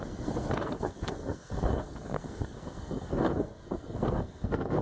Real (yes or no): no